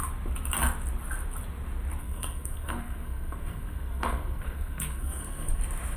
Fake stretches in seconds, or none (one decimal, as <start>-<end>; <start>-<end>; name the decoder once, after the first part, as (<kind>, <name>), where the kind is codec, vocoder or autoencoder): 2.0-5.6 (codec, SNAC)